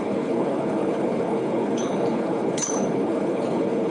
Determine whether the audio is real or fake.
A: fake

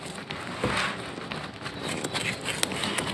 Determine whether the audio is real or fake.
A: real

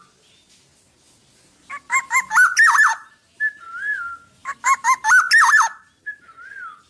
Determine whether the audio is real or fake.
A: real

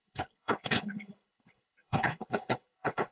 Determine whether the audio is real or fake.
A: fake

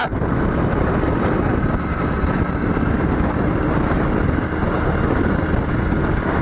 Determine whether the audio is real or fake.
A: real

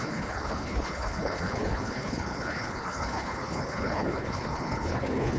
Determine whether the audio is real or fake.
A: fake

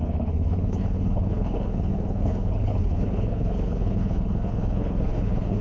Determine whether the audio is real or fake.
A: fake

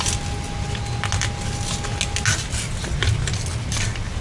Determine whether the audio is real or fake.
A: real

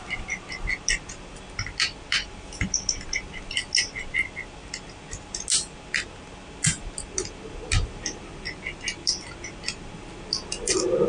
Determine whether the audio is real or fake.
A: real